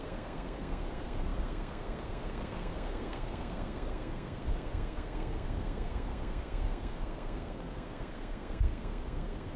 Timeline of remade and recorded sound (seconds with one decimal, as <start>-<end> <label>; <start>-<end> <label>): 0.0-9.6 remade